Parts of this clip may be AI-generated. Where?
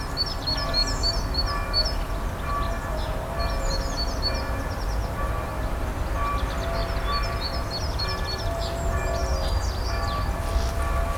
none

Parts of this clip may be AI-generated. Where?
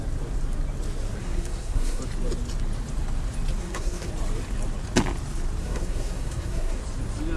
1.2-2.0 (codec, SNAC); 3.6-4.1; 5.6-6.8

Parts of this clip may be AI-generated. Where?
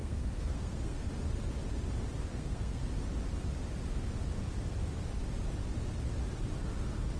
0.0-1.1 (codec, SNAC); 2.3-2.8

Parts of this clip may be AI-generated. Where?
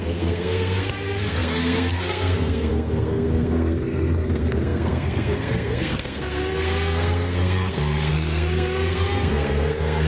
0.0-10.1 (codec, SNAC)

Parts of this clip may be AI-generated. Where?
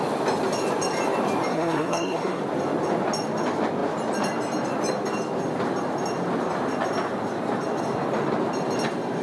1.5-2.4 (codec, SNAC)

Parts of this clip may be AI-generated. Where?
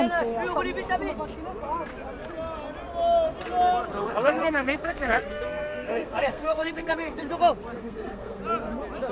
4.0-7.2 (codec, SNAC); 7.8-8.4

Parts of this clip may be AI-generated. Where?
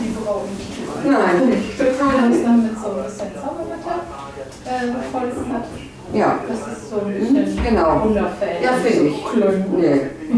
1.6-2.3 (codec, SNAC)